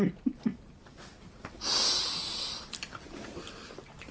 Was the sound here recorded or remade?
recorded